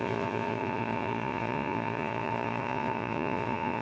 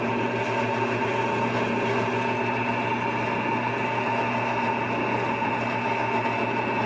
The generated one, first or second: first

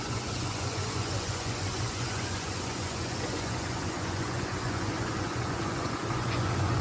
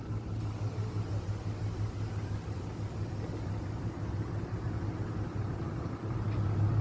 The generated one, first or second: first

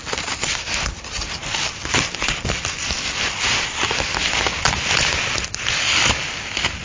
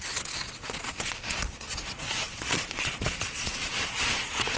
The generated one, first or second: second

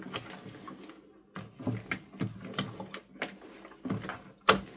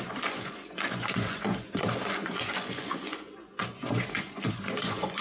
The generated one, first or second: second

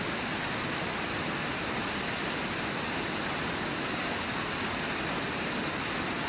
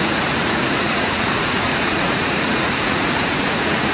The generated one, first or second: second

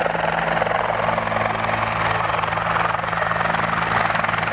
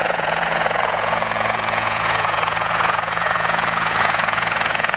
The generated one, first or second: second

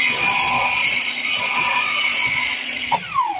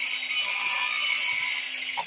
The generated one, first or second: first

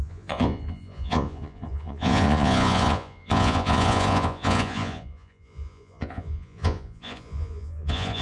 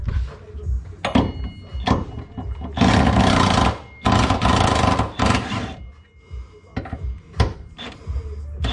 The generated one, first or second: first